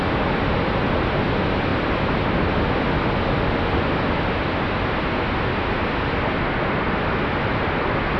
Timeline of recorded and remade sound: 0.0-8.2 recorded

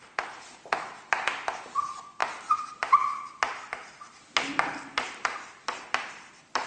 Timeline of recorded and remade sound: 0.0-6.7 recorded